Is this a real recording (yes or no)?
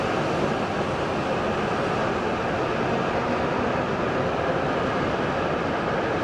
yes